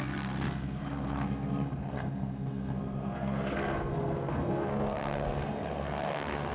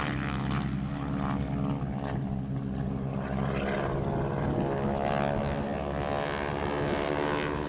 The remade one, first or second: first